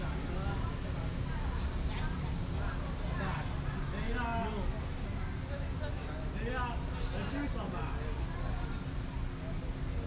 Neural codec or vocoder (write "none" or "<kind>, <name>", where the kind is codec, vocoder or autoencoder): none